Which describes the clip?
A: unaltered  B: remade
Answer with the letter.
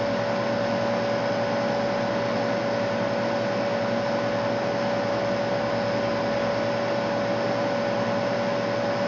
A